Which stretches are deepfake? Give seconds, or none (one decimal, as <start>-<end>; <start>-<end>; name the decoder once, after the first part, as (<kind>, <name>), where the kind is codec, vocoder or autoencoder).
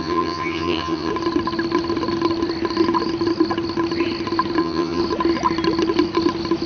0.0-1.1 (vocoder, HiFi-GAN); 4.6-5.0